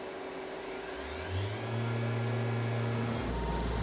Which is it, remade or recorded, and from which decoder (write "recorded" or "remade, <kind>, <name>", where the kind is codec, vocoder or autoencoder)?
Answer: recorded